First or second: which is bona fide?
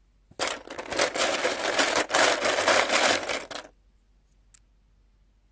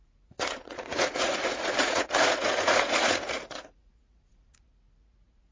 first